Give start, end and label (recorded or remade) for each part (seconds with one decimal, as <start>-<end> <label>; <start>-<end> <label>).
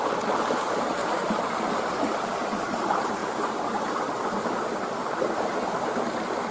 0.0-3.2 remade; 3.2-4.4 recorded; 4.4-6.5 remade